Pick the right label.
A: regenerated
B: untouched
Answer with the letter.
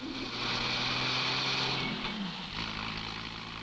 B